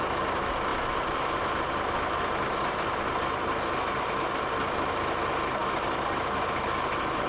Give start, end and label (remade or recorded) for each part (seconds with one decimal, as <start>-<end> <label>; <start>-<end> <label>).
0.0-7.3 recorded